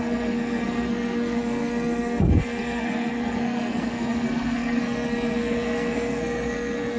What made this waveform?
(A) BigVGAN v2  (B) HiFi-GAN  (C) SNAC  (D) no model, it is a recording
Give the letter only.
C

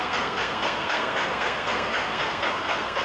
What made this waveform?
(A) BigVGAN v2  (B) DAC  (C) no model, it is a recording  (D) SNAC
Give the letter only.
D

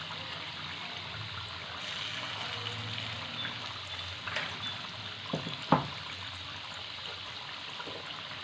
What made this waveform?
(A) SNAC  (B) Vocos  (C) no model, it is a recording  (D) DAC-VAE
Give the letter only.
C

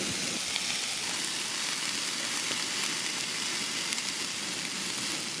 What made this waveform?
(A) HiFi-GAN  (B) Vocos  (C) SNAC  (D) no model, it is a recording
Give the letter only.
D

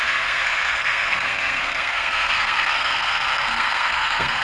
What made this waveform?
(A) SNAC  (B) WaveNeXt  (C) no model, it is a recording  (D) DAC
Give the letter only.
A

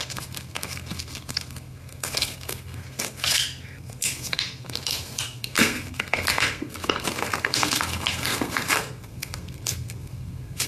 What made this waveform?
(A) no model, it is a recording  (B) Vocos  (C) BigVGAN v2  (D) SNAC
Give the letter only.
D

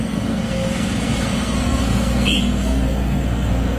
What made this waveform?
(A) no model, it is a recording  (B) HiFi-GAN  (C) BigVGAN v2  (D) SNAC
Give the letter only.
D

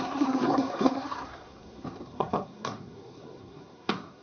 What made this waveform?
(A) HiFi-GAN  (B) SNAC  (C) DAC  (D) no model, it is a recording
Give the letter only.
B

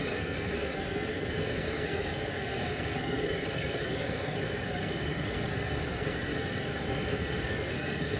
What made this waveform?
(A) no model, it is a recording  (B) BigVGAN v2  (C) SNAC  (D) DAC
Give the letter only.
C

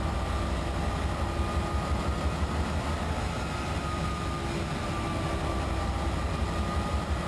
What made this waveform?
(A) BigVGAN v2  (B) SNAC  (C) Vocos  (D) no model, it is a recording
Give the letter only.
D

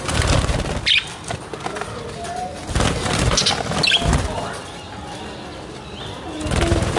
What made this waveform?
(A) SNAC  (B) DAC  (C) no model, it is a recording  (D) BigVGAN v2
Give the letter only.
C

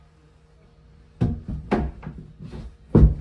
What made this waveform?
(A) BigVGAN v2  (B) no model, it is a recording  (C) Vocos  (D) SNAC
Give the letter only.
B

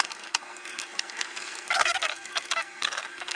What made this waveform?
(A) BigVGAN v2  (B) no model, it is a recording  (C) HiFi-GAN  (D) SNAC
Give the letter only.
D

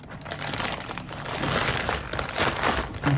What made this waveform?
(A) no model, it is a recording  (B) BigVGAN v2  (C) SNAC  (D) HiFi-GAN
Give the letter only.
A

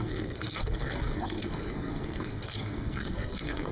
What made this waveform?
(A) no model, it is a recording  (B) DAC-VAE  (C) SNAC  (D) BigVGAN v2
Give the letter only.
C